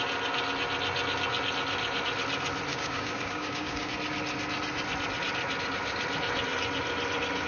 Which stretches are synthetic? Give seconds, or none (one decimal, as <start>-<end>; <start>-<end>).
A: 2.7-3.9

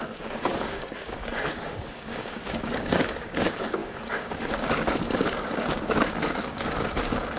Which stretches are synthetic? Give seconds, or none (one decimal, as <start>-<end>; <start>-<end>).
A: 0.0-7.4

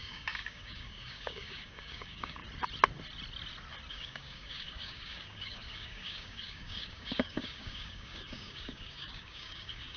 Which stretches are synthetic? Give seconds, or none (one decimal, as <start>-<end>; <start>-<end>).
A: 0.0-2.4; 3.9-10.0

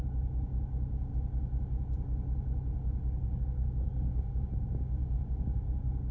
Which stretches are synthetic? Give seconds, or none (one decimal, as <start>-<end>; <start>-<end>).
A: 0.0-1.1; 3.4-6.1

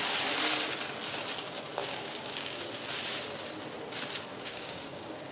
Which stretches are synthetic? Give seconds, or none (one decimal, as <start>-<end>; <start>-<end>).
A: 1.8-2.7; 4.3-5.3

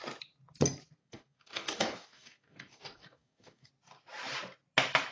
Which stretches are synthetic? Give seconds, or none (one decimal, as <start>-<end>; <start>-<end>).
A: 1.0-3.7

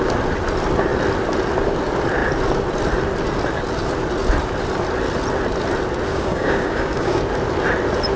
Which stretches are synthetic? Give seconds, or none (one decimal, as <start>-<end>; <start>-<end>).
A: 6.1-7.2

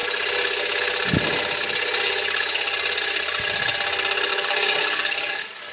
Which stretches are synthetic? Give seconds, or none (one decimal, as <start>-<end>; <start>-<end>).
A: 4.3-5.7